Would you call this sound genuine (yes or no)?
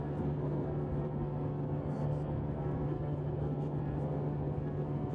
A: no